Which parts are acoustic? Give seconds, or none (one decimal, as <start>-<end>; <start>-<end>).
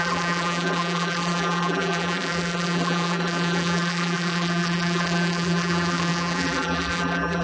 none